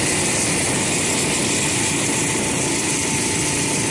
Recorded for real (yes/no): yes